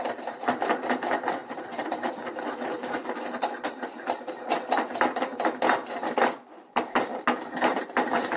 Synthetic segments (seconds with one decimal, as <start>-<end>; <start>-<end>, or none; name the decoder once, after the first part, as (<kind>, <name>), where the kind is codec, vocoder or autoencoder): 1.4-4.2 (vocoder, BigVGAN v2); 7.1-7.8